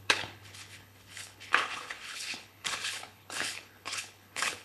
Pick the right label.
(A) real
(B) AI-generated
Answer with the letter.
B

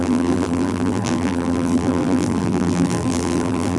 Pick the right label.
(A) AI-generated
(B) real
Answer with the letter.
A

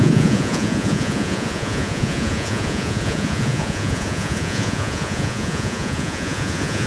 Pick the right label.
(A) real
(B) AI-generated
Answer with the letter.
B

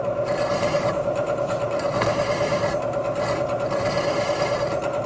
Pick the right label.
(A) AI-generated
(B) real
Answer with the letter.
B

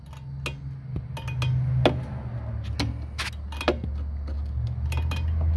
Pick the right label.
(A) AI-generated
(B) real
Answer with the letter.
B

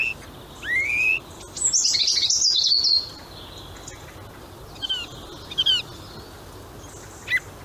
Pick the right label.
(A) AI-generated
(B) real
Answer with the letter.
B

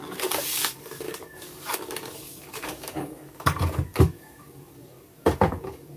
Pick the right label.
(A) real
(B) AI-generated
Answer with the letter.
B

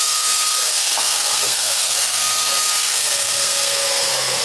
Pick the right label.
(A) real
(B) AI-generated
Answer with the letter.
B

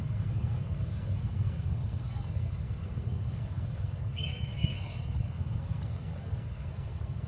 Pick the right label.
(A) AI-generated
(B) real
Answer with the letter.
A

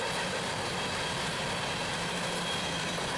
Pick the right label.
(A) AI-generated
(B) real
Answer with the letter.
B